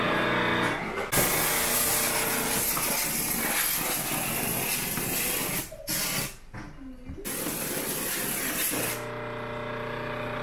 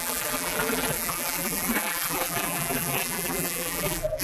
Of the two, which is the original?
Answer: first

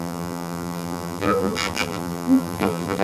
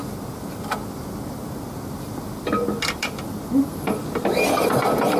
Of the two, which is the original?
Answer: second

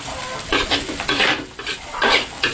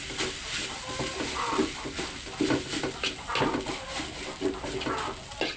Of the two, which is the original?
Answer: second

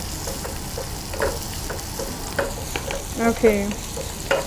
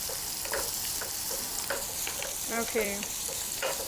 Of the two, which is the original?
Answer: first